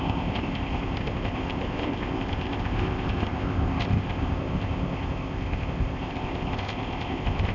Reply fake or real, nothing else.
fake